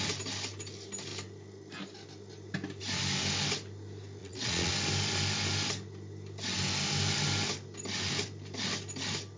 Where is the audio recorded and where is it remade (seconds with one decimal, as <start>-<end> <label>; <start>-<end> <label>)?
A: 0.0-4.2 recorded; 4.2-4.7 remade; 4.7-9.4 recorded